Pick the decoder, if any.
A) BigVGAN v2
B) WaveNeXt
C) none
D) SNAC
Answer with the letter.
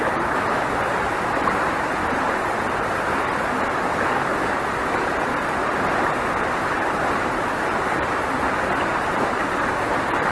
C